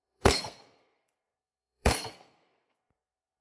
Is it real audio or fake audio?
fake